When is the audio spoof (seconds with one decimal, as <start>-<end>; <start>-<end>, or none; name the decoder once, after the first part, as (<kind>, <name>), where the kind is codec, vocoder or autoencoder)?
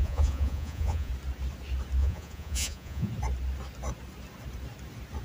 0.0-1.1 (vocoder, Vocos); 2.0-3.1